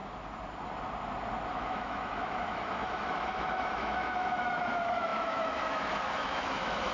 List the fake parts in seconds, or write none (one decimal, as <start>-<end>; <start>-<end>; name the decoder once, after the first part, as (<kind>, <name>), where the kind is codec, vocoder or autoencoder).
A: 1.5-6.9 (autoencoder, DAC-VAE)